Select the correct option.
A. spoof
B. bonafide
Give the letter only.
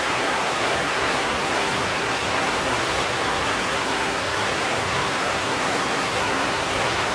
A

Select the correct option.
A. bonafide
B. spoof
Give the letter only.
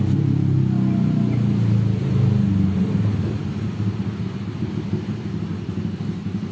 A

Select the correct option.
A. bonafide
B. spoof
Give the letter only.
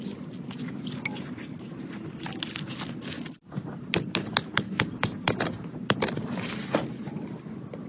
A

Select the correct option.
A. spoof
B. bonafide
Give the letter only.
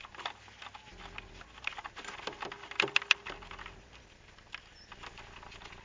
B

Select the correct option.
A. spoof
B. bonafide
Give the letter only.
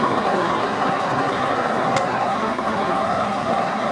A